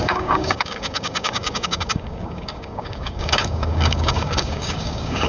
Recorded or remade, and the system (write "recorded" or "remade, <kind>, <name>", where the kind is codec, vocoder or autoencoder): remade, codec, DAC